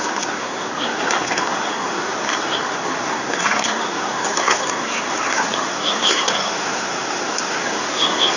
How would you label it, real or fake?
fake